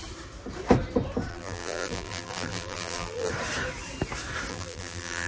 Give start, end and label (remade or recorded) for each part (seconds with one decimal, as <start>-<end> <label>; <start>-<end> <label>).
0.0-1.3 recorded; 1.3-3.3 remade; 3.3-4.5 recorded; 4.5-5.3 remade